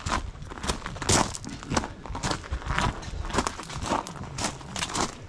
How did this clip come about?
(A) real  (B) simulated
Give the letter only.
A